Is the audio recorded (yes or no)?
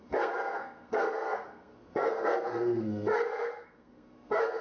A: no